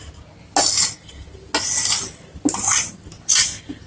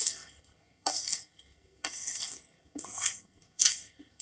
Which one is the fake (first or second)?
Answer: second